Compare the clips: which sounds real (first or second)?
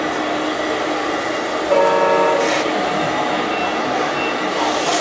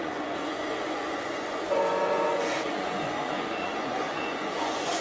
first